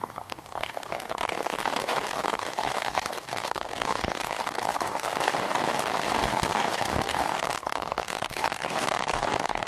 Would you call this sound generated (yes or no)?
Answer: yes